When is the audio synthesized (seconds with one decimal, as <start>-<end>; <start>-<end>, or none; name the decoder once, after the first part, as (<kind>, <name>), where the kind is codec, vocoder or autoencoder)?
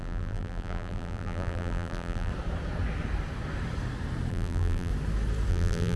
0.0-2.3 (vocoder, BigVGAN v2); 4.3-4.9; 5.5-6.0